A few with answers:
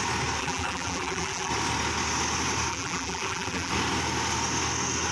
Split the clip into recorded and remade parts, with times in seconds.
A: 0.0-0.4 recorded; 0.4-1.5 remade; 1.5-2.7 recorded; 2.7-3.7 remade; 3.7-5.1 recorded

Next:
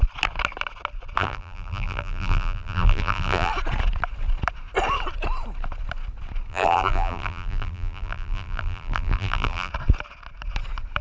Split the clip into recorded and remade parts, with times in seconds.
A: 0.0-1.2 recorded; 1.2-3.5 remade; 3.5-6.5 recorded; 6.5-9.7 remade; 9.7-11.0 recorded

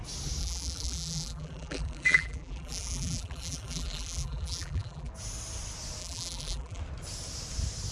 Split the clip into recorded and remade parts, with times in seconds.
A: 0.0-0.4 recorded; 0.4-5.1 remade; 5.1-6.0 recorded; 6.0-6.8 remade; 6.8-7.9 recorded

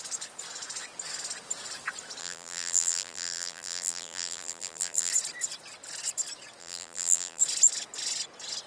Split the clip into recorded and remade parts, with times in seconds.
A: 0.0-2.2 recorded; 2.2-5.1 remade; 5.1-6.6 recorded; 6.6-7.4 remade; 7.4-8.7 recorded

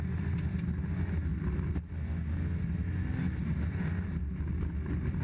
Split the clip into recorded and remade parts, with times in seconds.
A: 0.0-5.2 recorded

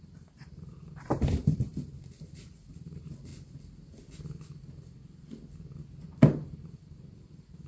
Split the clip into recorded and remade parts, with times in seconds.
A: 0.0-3.3 remade; 3.3-6.0 recorded; 6.0-7.7 remade

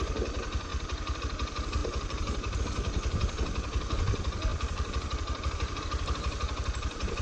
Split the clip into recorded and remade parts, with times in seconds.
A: 0.0-0.7 recorded; 0.7-1.2 remade; 1.2-1.8 recorded; 1.8-2.6 remade; 2.6-4.5 recorded; 4.5-5.8 remade; 5.8-7.2 recorded

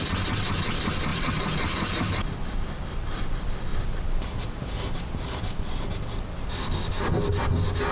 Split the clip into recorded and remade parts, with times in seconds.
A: 0.0-1.1 recorded; 1.1-3.2 remade; 3.2-3.7 recorded; 3.7-5.4 remade; 5.4-7.9 recorded